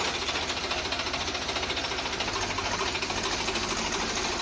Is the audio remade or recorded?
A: recorded